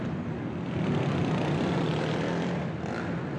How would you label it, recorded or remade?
recorded